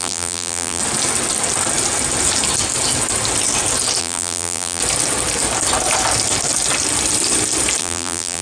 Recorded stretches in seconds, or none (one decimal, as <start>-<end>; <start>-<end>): 0.8-4.0; 4.8-7.8